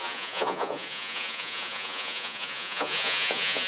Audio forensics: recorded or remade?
remade